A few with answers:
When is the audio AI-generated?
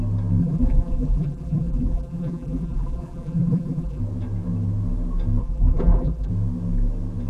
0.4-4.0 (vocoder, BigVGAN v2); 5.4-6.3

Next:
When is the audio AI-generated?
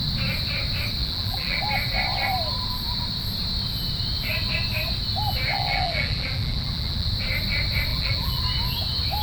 1.0-1.6 (vocoder, BigVGAN v2); 5.5-7.1; 7.9-8.4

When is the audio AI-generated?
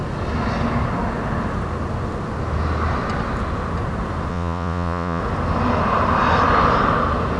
4.3-5.2 (vocoder, Vocos)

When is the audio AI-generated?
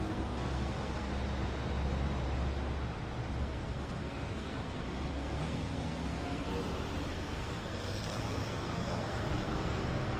0.0-1.1 (codec, SNAC); 3.4-6.5; 7.1-10.2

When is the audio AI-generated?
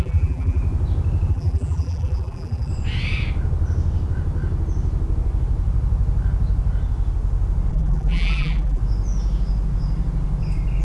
0.0-0.6 (vocoder, BigVGAN v2); 1.3-2.7; 7.7-8.8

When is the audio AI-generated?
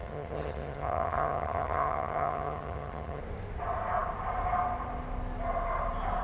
0.0-3.2 (vocoder, HiFi-GAN)